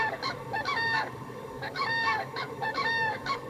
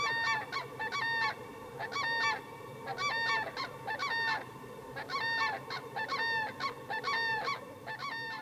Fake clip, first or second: first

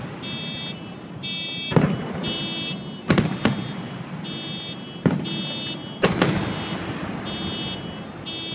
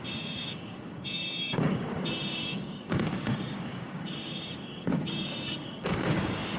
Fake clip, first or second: second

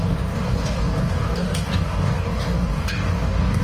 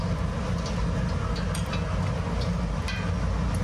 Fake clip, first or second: first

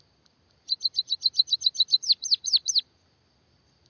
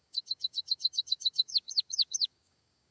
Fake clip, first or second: second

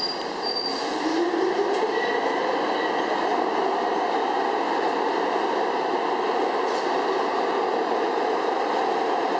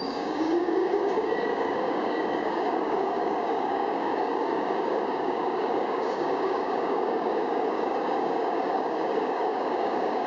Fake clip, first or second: second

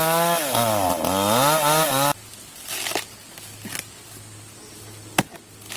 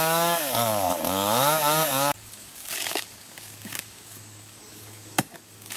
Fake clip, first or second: second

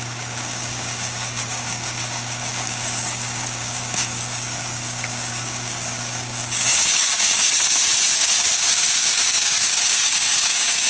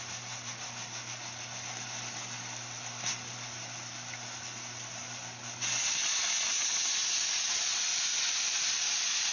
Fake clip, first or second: first